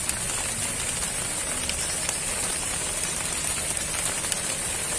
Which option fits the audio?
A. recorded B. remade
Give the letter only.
A